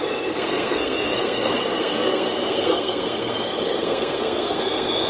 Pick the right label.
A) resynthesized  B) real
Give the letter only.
A